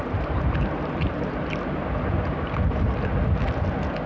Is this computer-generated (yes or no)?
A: no